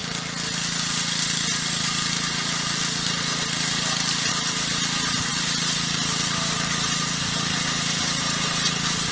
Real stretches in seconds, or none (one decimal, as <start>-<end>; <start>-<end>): 0.0-9.1